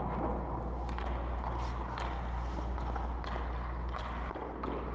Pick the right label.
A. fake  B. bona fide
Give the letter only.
B